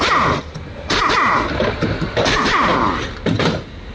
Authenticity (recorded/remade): recorded